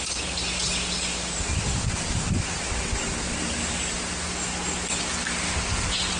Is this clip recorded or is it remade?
recorded